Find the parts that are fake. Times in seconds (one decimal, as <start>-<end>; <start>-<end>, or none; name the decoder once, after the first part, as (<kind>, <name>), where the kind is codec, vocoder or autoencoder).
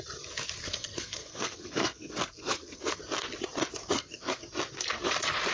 0.6-3.0 (codec, SNAC); 3.8-4.4